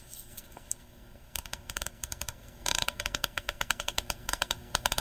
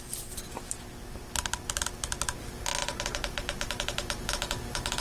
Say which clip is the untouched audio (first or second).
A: second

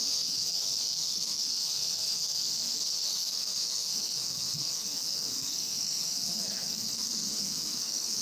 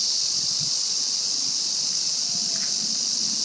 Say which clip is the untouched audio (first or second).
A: second